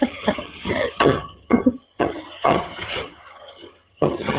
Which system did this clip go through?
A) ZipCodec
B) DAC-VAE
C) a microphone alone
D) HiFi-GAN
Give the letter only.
D